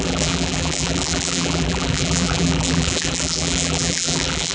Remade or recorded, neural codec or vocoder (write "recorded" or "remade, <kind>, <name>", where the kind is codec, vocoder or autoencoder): remade, vocoder, BigVGAN v2